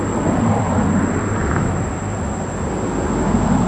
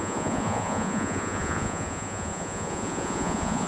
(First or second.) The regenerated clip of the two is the second